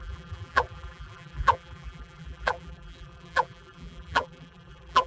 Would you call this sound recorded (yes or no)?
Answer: no